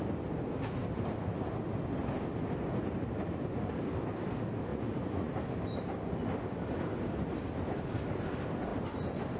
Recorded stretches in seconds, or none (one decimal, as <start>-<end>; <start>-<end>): 0.0-4.7; 5.3-9.4